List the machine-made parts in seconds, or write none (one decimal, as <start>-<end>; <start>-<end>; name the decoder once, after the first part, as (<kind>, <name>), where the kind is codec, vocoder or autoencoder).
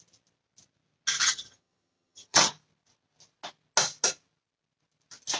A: 1.2-2.5 (vocoder, HiFi-GAN)